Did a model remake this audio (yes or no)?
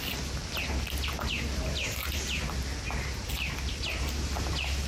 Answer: no